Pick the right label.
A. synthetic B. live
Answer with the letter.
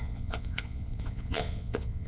A